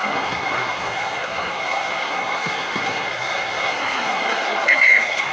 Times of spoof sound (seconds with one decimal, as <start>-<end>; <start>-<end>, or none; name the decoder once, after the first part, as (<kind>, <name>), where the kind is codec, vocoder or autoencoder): 0.0-5.3 (codec, SNAC)